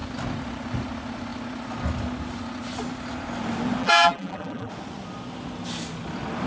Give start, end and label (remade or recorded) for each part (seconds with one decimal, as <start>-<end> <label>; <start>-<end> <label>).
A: 0.0-3.8 recorded; 3.8-4.7 remade; 4.7-6.5 recorded